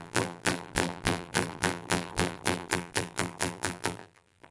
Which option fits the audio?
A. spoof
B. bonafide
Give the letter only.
A